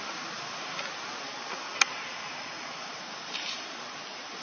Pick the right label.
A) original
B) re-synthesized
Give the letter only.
A